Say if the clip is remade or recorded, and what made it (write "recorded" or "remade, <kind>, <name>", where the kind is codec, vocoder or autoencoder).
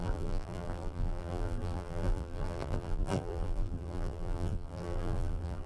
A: remade, vocoder, BigVGAN v2